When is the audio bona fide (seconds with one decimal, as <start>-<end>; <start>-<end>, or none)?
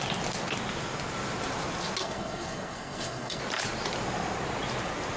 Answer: 0.0-2.0; 3.4-5.2